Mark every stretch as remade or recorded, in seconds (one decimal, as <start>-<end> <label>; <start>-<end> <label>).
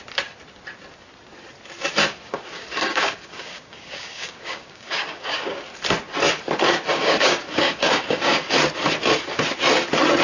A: 0.0-2.1 recorded; 2.1-5.6 remade; 5.6-6.9 recorded; 6.9-8.5 remade; 8.5-10.2 recorded